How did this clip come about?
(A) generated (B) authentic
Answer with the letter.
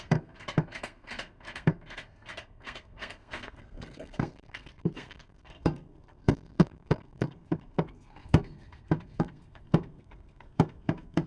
A